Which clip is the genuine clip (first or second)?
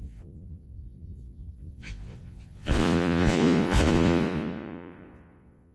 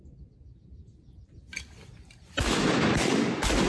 second